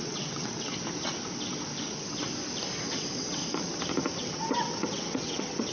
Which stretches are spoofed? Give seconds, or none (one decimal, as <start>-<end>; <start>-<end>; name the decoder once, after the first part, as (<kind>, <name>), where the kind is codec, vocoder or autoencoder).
0.0-0.7 (vocoder, WaveNeXt); 2.8-3.4; 4.2-5.7